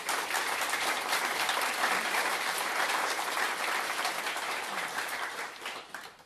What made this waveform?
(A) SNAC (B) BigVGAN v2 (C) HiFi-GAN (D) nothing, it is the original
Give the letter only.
B